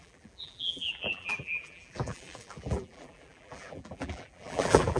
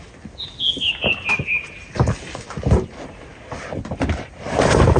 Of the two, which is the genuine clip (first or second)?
second